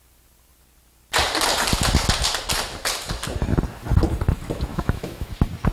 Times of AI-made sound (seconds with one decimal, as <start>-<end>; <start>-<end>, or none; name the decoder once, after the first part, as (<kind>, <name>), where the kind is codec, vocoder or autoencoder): 4.7-5.3 (autoencoder, DAC-VAE)